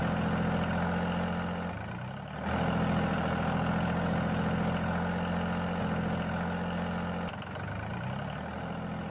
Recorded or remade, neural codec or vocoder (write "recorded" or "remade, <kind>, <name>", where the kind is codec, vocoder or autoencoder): recorded